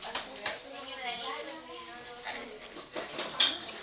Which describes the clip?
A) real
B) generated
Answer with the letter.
A